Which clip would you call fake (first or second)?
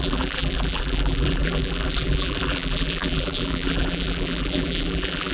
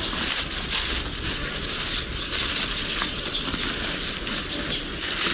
first